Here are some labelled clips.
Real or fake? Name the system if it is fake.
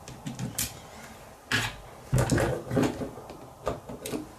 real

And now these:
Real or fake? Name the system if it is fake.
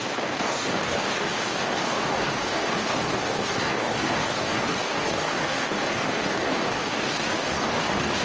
fake, codec, DAC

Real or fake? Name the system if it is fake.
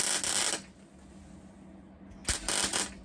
real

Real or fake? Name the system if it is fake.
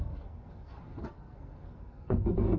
fake, codec, SNAC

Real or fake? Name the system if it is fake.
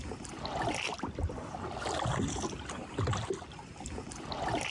real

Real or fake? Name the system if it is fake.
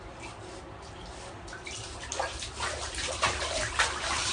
fake, vocoder, BigVGAN v2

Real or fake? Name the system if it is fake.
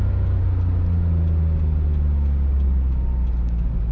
real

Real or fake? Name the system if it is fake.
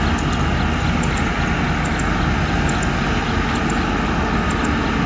real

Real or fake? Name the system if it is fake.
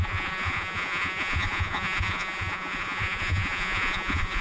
fake, vocoder, Vocos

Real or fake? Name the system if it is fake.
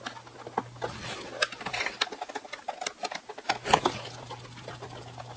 real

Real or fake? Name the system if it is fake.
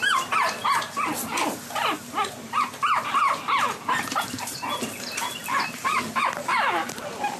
real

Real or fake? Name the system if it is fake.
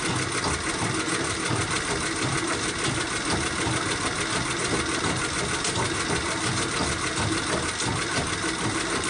real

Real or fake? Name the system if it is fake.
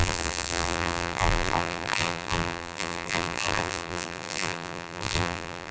fake, vocoder, BigVGAN v2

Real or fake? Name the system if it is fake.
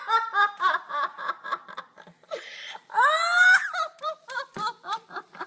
fake, vocoder, BigVGAN v2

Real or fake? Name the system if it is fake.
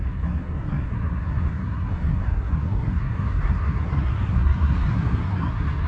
fake, codec, SNAC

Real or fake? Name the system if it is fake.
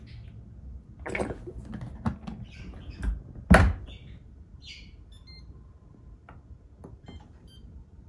real